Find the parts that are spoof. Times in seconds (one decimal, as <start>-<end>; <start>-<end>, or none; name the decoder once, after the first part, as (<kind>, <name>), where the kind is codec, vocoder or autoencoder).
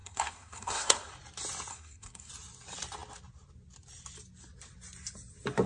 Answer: 0.0-1.1 (codec, SNAC); 1.7-2.3